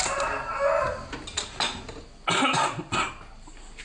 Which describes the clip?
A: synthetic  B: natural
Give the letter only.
B